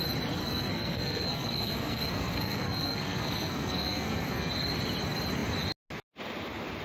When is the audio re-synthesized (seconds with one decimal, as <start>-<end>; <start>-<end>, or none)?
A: 0.4-4.5